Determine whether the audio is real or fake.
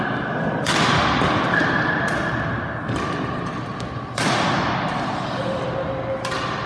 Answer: real